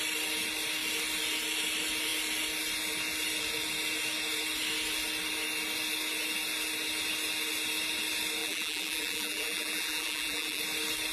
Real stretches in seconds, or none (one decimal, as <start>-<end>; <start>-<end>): 0.0-8.4; 10.6-11.1